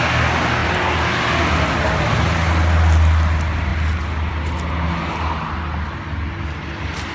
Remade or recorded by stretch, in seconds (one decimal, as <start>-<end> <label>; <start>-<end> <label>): 0.0-7.1 recorded

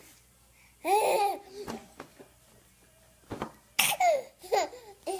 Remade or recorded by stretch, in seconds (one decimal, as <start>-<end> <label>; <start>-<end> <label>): 0.0-5.2 recorded

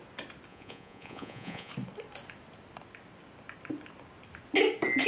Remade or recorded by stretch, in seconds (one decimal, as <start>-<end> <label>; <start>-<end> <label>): 0.0-0.5 recorded; 0.5-1.7 remade; 1.7-5.1 recorded

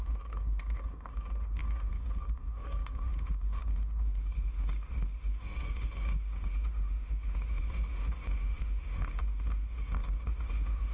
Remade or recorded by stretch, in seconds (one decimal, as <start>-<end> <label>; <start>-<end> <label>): 0.0-10.9 remade

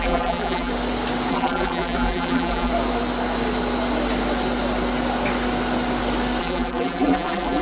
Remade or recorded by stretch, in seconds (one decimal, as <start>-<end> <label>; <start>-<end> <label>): 0.0-0.7 remade; 0.7-1.3 recorded; 1.3-2.7 remade; 2.7-6.4 recorded; 6.4-7.6 remade

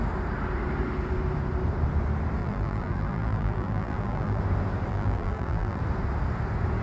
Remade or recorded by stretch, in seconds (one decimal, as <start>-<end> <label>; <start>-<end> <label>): 0.0-2.4 recorded; 2.4-4.4 remade; 4.4-4.9 recorded; 4.9-5.8 remade; 5.8-6.8 recorded

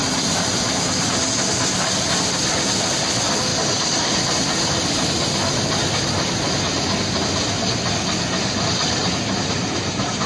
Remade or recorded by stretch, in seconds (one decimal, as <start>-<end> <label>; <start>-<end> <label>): 0.0-10.3 recorded